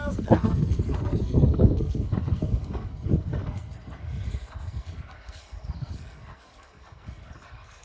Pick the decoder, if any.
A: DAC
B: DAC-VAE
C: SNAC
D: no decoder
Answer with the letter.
C